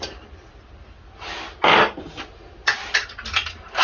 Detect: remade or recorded recorded